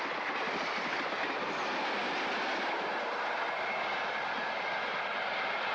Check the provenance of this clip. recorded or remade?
recorded